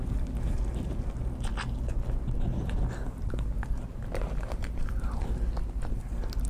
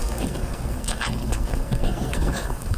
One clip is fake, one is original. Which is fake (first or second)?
second